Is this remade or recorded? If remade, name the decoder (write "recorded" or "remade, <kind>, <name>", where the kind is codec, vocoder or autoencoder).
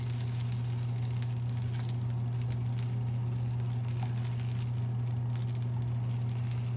recorded